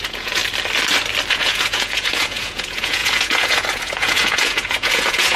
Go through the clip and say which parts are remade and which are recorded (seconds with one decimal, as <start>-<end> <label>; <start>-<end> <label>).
0.0-0.4 remade; 0.4-1.3 recorded; 1.3-5.4 remade